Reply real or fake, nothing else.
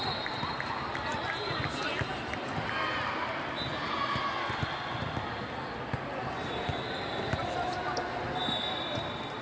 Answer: real